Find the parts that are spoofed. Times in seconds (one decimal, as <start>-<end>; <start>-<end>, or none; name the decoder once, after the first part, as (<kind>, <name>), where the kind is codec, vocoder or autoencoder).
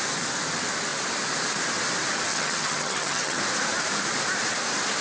2.3-3.4 (vocoder, HiFi-GAN)